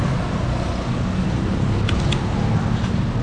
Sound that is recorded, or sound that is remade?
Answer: recorded